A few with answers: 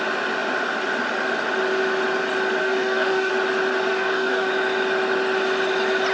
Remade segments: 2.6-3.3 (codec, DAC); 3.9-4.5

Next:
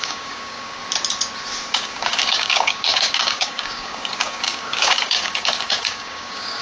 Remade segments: 0.0-0.8 (codec, DAC); 1.7-6.6

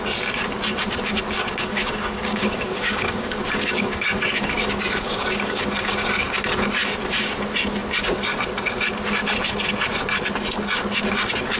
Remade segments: 1.4-5.6 (codec, DAC)

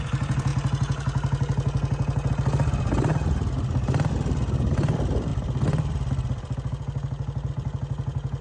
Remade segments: none